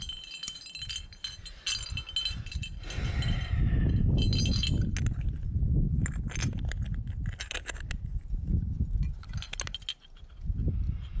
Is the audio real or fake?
real